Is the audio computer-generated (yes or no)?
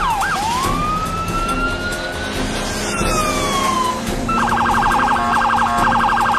no